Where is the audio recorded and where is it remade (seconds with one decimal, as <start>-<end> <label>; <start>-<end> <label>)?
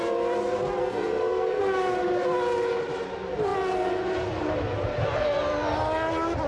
0.0-0.8 recorded; 0.8-1.6 remade; 1.6-6.5 recorded